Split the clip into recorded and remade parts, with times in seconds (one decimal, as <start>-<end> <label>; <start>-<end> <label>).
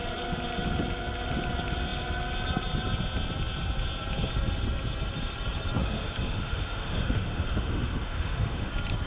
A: 0.0-5.8 recorded; 5.8-8.7 remade; 8.7-9.1 recorded